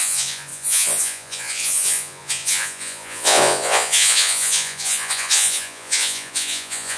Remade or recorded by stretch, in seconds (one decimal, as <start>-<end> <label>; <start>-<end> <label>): 0.0-7.0 remade